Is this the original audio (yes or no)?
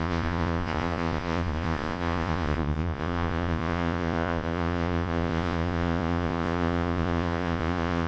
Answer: no